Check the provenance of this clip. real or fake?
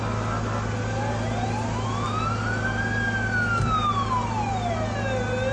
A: real